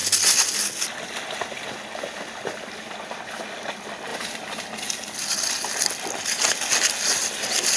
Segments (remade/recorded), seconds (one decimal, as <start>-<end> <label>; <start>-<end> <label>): 0.0-7.8 recorded